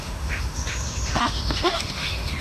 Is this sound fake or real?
fake